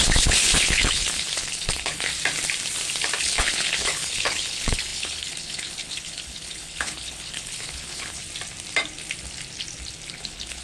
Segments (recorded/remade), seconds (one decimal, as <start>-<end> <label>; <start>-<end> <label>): 0.0-2.1 remade; 2.1-3.2 recorded; 3.2-8.2 remade; 8.2-10.1 recorded; 10.1-10.6 remade

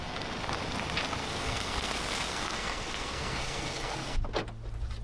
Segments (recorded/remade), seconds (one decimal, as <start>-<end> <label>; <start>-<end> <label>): 0.0-1.2 recorded; 1.2-4.2 remade; 4.2-5.0 recorded

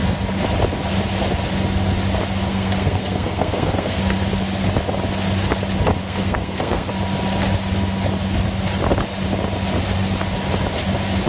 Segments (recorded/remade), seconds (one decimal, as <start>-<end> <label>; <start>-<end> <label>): 0.0-2.5 recorded; 2.5-4.0 remade; 4.0-6.0 recorded; 6.0-6.9 remade; 6.9-11.3 recorded

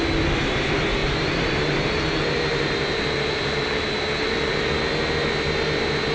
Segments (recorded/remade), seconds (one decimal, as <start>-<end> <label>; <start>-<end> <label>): 0.0-1.0 recorded; 1.0-4.7 remade; 4.7-6.1 recorded